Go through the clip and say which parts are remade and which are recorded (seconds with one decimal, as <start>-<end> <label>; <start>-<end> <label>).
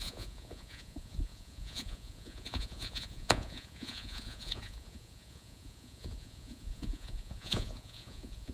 0.0-8.5 remade